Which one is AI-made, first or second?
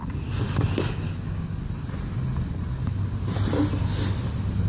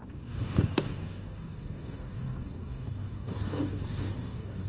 second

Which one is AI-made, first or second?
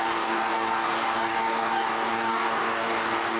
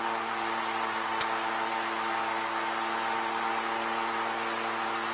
first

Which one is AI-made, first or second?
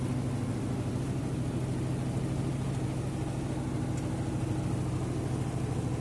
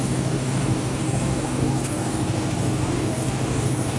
second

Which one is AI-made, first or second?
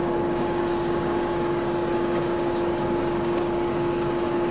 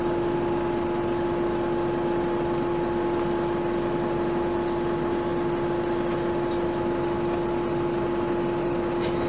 first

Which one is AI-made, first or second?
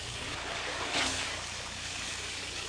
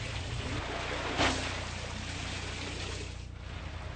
first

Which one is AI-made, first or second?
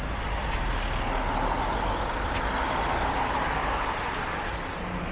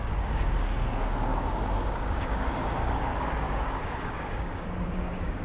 second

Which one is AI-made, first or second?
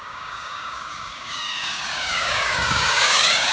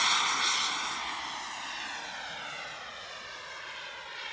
first